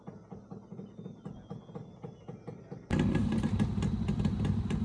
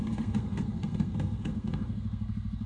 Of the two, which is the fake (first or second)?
second